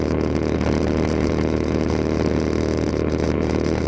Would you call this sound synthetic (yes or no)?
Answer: yes